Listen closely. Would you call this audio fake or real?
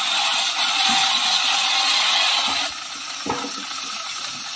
real